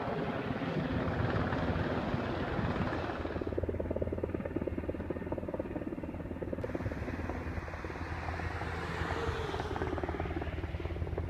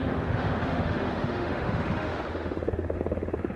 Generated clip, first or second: second